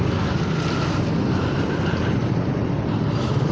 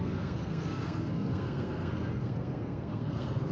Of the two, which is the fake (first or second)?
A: second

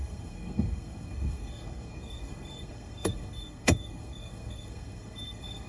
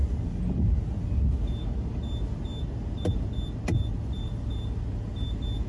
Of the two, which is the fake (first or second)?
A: first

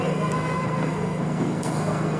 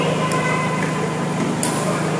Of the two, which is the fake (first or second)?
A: first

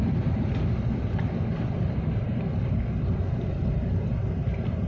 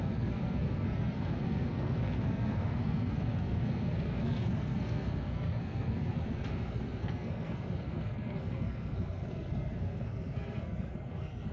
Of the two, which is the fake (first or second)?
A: second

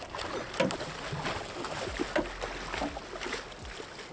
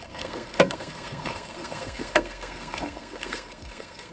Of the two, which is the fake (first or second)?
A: second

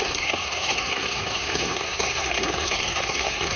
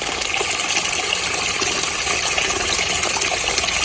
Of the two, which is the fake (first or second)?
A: first